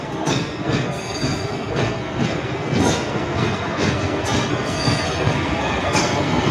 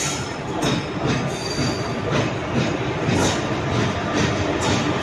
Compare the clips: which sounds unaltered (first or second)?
second